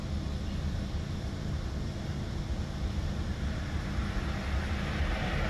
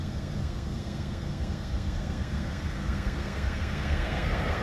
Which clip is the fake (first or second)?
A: second